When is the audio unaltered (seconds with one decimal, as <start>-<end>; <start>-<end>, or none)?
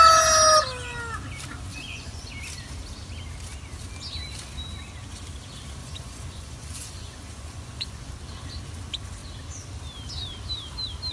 0.0-1.7; 2.3-5.8; 8.1-11.1